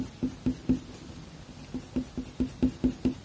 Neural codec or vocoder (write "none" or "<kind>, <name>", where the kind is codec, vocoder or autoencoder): none